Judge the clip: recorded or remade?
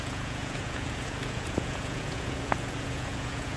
remade